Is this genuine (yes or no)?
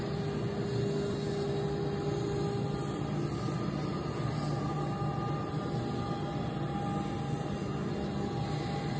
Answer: yes